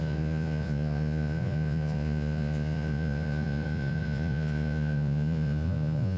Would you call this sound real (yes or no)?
no